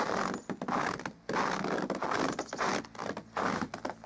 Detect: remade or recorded recorded